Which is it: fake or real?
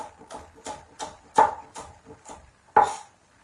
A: real